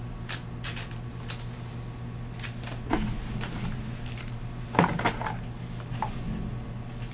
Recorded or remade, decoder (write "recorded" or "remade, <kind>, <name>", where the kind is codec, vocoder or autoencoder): recorded